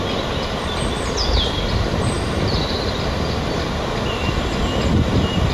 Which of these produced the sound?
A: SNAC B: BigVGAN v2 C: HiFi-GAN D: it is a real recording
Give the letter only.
D